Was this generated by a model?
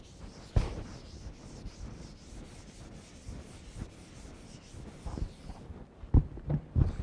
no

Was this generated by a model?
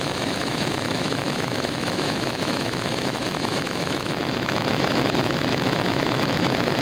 yes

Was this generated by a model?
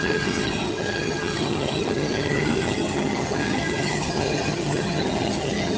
yes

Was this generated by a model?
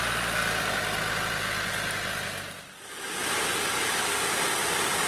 no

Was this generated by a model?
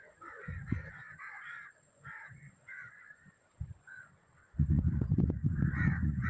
yes